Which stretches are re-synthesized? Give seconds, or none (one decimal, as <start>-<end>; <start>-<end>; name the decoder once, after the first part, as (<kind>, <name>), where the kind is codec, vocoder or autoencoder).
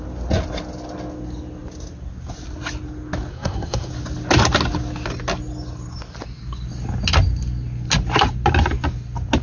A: 3.3-3.9 (codec, SNAC)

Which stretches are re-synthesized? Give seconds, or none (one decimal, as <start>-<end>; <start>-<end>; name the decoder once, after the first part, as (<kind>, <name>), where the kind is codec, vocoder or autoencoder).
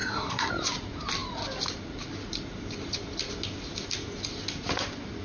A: 0.0-0.5 (codec, SNAC)